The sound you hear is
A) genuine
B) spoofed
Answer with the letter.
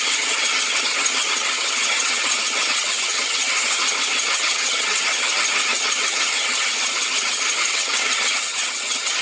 B